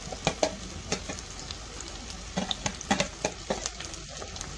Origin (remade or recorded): recorded